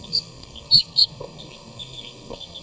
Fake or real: fake